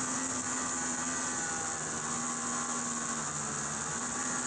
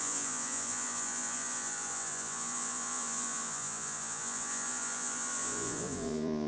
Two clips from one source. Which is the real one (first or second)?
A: first